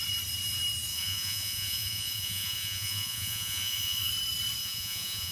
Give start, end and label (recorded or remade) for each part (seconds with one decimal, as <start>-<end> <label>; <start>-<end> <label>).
0.0-0.9 recorded; 0.9-4.1 remade; 4.1-4.6 recorded; 4.6-5.3 remade

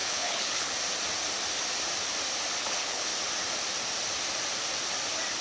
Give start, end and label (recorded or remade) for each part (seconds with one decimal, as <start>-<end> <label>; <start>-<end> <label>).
0.0-0.7 remade; 0.7-2.6 recorded; 2.6-3.1 remade; 3.1-5.4 recorded

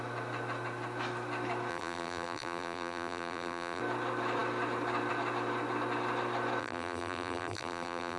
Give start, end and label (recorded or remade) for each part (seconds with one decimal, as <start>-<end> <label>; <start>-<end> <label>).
0.0-1.7 recorded; 1.7-3.8 remade; 3.8-6.6 recorded; 6.6-8.2 remade